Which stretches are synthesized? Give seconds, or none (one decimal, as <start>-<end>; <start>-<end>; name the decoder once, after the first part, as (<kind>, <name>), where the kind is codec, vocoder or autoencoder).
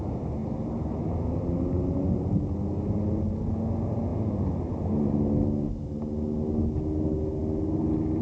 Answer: none